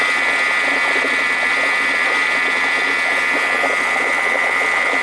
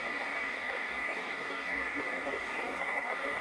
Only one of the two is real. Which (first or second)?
first